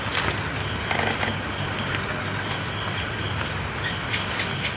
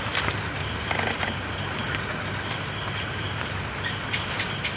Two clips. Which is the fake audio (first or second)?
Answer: second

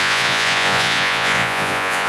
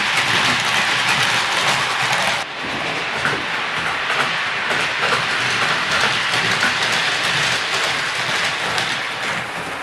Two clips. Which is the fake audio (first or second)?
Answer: first